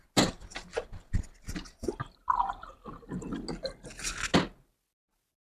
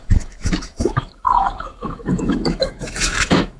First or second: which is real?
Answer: first